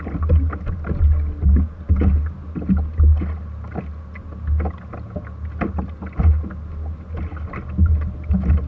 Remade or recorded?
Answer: recorded